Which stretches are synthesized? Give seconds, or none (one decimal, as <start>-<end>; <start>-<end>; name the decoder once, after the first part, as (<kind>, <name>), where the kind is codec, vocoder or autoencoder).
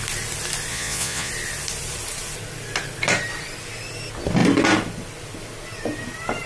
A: 0.7-1.3 (vocoder, Vocos)